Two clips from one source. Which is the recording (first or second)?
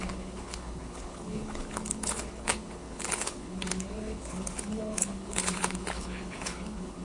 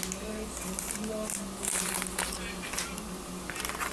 second